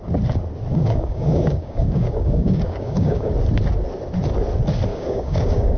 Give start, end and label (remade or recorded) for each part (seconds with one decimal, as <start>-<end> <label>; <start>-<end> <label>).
0.0-0.7 recorded; 0.7-3.3 remade; 3.3-4.9 recorded; 4.9-5.8 remade